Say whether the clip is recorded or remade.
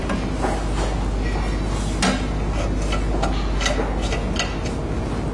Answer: recorded